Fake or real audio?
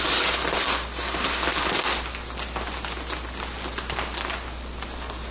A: real